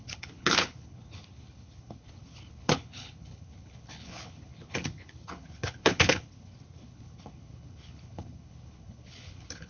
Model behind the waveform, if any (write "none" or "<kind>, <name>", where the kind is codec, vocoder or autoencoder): codec, HILCodec